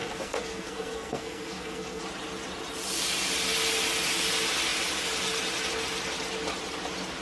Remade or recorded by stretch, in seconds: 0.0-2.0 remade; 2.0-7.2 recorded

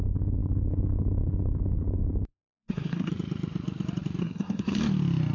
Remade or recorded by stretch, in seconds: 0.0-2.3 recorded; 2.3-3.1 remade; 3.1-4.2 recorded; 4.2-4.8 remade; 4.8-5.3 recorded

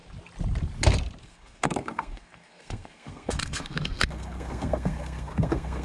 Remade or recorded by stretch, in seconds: 0.0-1.2 recorded; 1.2-5.8 remade